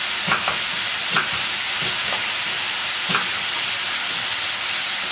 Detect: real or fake real